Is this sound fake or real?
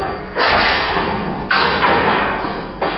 fake